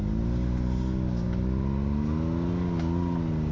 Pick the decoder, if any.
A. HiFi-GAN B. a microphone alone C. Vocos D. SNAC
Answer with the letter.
B